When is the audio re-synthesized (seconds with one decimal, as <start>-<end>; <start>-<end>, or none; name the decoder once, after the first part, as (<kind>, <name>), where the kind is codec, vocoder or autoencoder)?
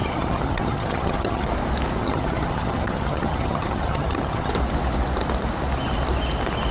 0.0-1.5 (vocoder, HiFi-GAN); 2.0-4.5